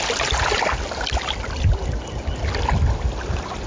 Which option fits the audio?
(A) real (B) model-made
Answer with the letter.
A